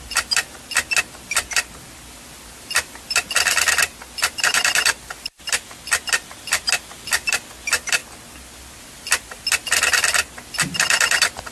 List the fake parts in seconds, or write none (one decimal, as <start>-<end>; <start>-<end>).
none